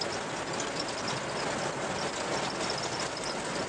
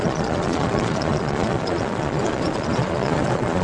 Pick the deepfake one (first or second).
second